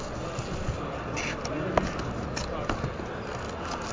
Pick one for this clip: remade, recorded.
recorded